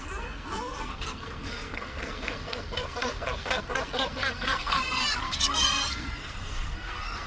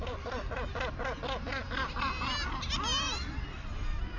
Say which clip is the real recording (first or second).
second